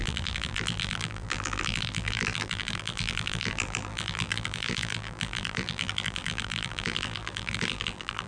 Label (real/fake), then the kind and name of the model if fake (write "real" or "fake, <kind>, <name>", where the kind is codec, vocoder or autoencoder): fake, vocoder, BigVGAN v2